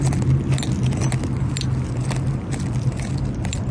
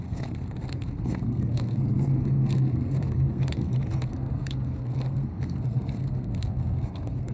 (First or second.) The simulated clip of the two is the second